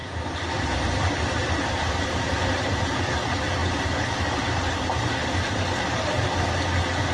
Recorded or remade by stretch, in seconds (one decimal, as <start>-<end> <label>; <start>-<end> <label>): 0.0-3.0 remade; 3.0-5.2 recorded; 5.2-5.8 remade; 5.8-7.1 recorded